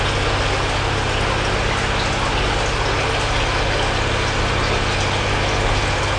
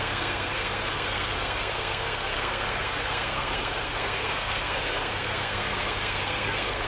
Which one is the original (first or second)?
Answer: first